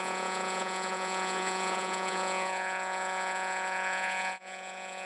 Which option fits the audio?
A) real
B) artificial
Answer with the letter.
B